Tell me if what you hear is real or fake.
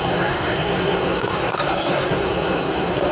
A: fake